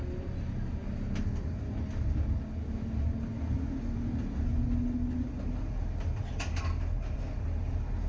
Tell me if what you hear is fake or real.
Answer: real